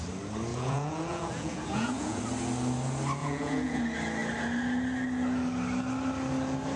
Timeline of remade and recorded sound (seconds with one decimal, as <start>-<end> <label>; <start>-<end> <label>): 0.0-0.5 recorded; 0.5-2.2 remade; 2.2-3.2 recorded; 3.2-3.8 remade; 3.8-6.8 recorded